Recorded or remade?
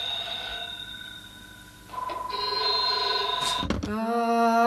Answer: recorded